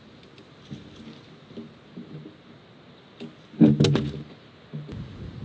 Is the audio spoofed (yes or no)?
no